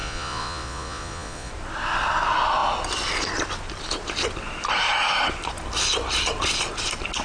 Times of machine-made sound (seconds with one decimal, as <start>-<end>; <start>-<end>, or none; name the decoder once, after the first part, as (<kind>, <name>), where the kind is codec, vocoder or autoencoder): 0.0-1.5 (vocoder, Vocos)